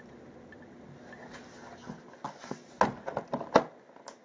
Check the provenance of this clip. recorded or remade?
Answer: recorded